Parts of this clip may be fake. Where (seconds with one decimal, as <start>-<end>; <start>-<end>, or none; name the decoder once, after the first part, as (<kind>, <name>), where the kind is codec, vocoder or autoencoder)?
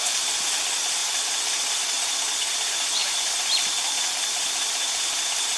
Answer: 1.0-1.8 (vocoder, BigVGAN v2); 3.0-5.0